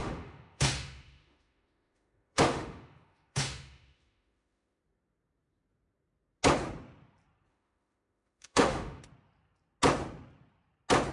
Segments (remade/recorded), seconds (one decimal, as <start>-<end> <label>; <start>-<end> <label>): 0.0-4.8 remade; 4.8-7.5 recorded; 7.5-9.0 remade; 9.0-11.1 recorded